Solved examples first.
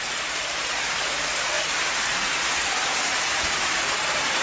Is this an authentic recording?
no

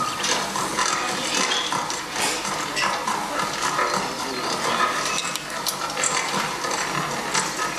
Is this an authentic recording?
yes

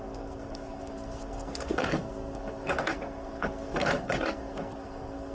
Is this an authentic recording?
no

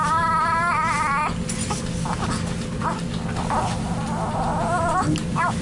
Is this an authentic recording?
yes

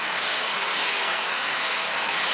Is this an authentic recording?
no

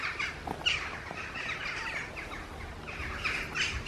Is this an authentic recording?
yes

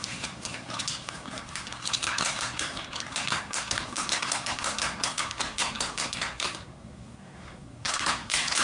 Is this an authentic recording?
no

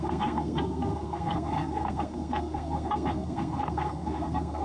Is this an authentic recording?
no